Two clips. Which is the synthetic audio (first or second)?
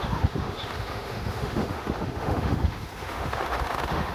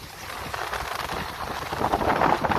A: first